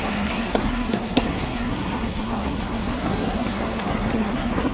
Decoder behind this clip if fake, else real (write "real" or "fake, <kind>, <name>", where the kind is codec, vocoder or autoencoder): fake, codec, SNAC